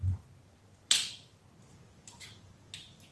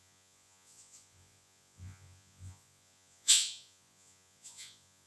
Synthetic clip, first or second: second